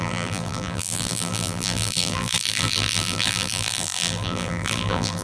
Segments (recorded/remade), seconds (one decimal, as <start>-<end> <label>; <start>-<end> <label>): 0.0-5.2 remade

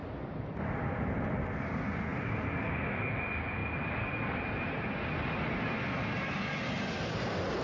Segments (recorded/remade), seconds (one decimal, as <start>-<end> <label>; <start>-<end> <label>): 0.0-1.0 remade; 1.0-2.1 recorded; 2.1-2.7 remade; 2.7-7.6 recorded

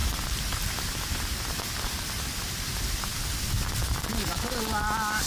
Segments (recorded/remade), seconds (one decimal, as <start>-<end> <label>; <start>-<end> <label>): 0.0-3.2 remade; 3.2-5.3 recorded

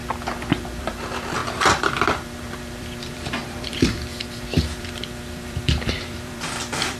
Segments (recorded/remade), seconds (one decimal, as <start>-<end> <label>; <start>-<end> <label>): 0.0-0.8 recorded; 0.8-7.0 remade

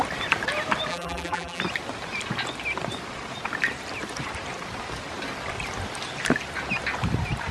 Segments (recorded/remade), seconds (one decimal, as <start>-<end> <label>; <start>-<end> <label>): 0.0-0.9 recorded; 0.9-1.6 remade; 1.6-7.5 recorded